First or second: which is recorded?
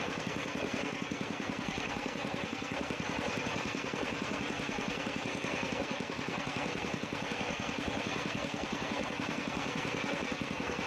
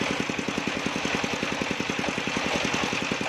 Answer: second